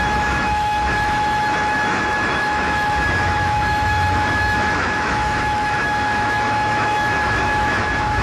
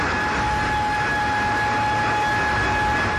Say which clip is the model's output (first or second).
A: first